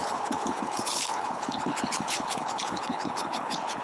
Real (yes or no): no